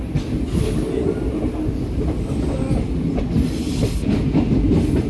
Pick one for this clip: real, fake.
real